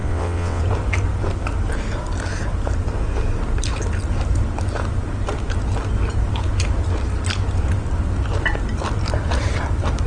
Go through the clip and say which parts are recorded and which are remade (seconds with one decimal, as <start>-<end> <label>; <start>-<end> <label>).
0.0-0.6 remade; 0.6-10.1 recorded

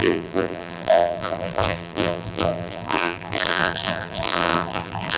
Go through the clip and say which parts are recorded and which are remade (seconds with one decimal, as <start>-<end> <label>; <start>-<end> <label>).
0.0-5.2 remade

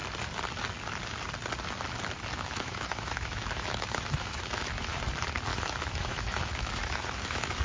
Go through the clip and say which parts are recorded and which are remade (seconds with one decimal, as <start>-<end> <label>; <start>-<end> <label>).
0.0-2.3 recorded; 2.3-5.0 remade; 5.0-5.5 recorded; 5.5-7.6 remade